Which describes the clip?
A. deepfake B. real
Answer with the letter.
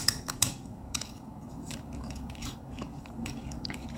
A